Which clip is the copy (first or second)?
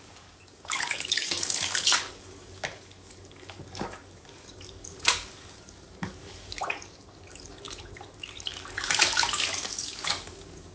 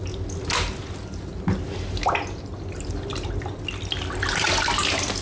first